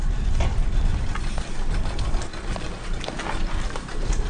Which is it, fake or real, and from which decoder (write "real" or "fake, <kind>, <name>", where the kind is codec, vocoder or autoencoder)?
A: real